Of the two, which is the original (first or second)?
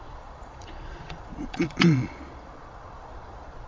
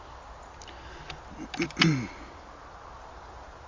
second